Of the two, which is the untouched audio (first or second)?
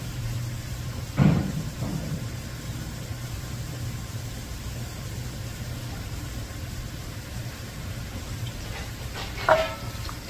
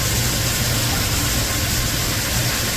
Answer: second